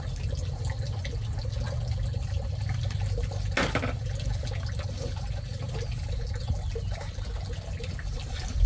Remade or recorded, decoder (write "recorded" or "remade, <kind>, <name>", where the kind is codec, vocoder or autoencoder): recorded